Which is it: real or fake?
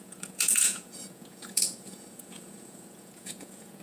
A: fake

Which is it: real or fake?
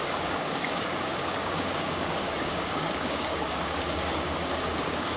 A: fake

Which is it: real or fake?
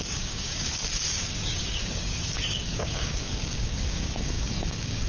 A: fake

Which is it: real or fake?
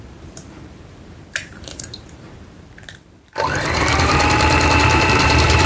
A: fake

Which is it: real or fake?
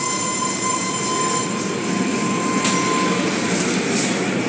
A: real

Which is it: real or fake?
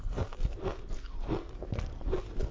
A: real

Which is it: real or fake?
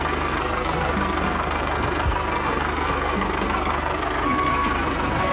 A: fake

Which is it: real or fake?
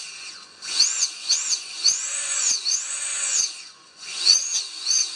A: fake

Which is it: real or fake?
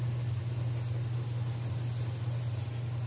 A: real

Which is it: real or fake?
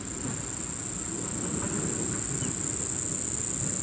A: real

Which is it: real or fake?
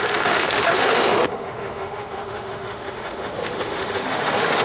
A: fake